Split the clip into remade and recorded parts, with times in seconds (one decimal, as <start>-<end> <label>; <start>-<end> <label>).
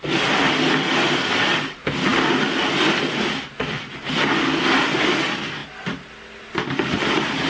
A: 0.0-7.5 recorded